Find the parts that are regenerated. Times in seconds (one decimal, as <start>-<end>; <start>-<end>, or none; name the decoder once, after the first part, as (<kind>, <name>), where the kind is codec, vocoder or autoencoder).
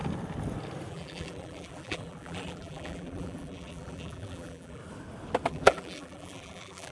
0.9-4.8 (vocoder, BigVGAN v2); 5.5-6.9